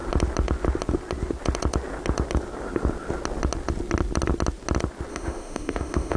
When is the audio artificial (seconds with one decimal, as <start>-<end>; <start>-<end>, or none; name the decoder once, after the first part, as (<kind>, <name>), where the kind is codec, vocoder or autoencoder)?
5.1-6.2 (autoencoder, DAC-VAE)